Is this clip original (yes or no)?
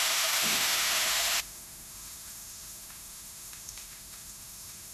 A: no